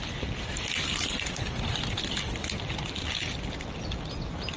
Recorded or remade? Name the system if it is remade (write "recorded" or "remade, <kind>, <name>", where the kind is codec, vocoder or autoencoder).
recorded